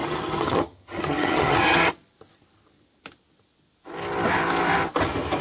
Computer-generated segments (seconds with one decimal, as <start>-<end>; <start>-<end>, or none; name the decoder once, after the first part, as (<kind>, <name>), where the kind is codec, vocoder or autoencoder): 0.0-1.9 (vocoder, HiFi-GAN)